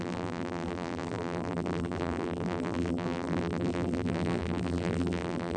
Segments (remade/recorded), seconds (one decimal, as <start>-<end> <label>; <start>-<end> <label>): 0.0-5.6 remade